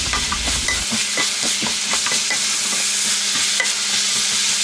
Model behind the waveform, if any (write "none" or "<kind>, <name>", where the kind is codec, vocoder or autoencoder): none